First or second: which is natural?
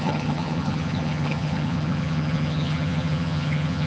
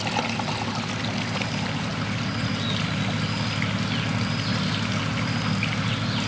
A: second